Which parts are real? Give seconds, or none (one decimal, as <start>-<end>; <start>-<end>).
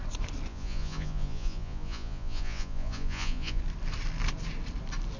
0.0-0.5; 3.6-5.2